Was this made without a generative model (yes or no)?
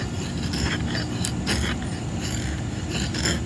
yes